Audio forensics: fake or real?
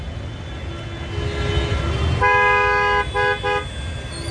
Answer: real